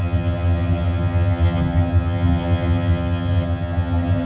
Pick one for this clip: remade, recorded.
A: remade